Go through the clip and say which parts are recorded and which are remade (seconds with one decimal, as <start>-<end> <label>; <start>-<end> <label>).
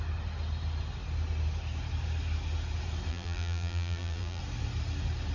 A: 0.0-3.1 recorded; 3.1-4.4 remade; 4.4-5.3 recorded